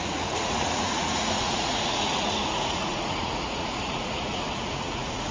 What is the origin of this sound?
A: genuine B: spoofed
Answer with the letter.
B